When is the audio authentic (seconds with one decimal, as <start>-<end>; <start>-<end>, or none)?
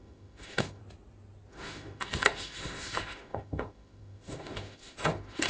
0.8-1.5